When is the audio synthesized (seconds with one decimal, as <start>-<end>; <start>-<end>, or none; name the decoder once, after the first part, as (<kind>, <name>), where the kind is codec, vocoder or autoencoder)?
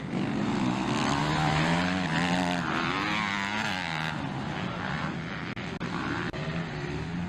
none